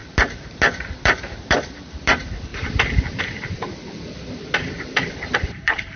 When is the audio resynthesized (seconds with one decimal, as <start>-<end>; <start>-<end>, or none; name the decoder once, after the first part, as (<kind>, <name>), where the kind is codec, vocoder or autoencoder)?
0.0-2.5 (vocoder, BigVGAN v2); 3.2-6.0